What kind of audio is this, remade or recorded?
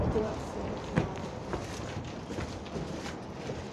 recorded